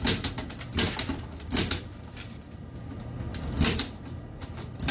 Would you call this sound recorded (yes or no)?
yes